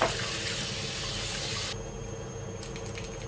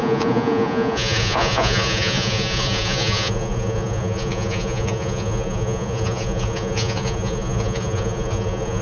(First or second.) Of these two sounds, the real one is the first